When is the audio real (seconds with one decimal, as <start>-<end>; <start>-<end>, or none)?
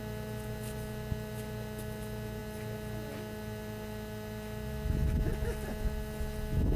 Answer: 0.0-6.8